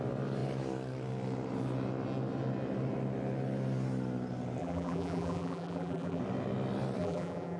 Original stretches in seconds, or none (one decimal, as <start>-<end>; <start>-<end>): 0.0-4.6; 6.2-7.0